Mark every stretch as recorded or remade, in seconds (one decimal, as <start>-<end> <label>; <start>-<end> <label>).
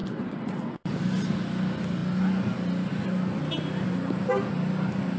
0.0-0.9 remade; 0.9-5.2 recorded